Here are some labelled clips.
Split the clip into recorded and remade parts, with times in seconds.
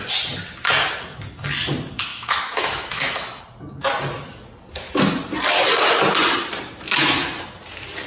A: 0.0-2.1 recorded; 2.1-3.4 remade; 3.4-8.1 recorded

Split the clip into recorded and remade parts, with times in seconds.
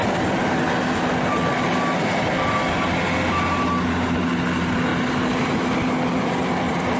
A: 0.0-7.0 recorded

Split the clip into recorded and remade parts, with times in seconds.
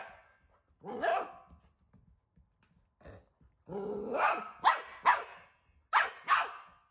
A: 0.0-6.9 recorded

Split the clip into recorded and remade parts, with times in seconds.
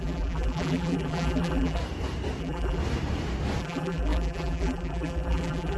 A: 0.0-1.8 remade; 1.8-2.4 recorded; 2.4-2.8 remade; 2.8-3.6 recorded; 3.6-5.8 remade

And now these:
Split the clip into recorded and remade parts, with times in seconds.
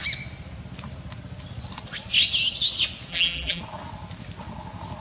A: 0.0-3.1 recorded; 3.1-3.6 remade; 3.6-5.0 recorded